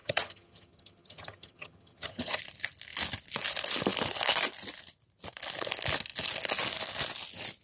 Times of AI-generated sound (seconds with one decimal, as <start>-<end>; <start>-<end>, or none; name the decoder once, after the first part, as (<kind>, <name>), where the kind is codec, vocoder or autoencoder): 0.0-2.4 (vocoder, HiFi-GAN)